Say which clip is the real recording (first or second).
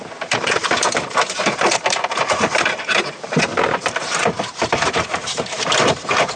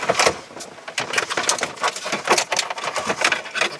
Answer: second